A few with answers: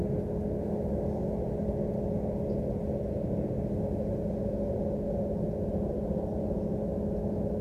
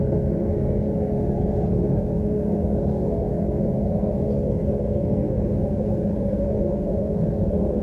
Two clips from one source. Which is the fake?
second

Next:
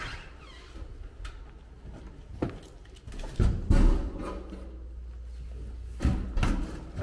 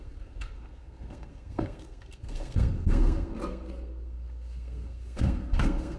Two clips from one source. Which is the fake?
second